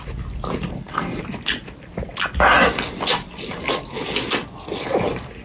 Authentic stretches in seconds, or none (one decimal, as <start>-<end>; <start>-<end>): 0.0-0.7; 1.2-5.4